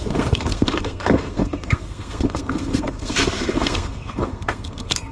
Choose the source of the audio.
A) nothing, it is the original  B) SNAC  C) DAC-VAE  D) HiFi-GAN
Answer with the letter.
B